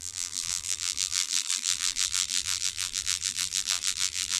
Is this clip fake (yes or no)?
yes